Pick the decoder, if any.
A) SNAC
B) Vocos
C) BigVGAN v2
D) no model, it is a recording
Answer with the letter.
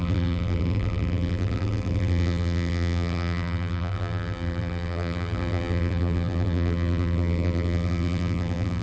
C